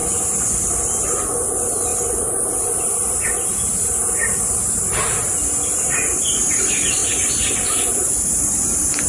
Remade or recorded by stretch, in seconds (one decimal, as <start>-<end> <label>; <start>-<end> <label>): 0.0-7.0 recorded; 7.0-7.7 remade; 7.7-9.1 recorded